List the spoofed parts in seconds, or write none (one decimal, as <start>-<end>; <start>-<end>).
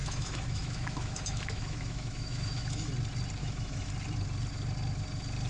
0.0-2.9; 3.4-3.9